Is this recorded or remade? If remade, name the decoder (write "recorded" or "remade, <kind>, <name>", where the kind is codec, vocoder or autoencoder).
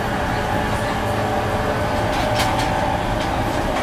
recorded